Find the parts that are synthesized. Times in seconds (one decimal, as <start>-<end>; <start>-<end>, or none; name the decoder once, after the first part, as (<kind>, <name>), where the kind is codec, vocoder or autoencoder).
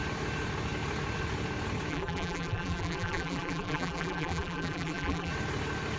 1.9-5.3 (vocoder, BigVGAN v2)